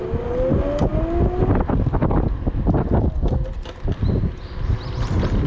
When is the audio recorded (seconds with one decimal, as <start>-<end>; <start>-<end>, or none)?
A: 0.0-5.5